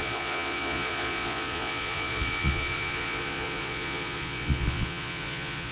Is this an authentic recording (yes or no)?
no